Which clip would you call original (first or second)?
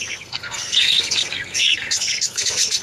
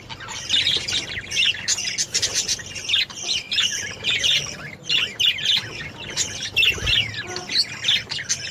second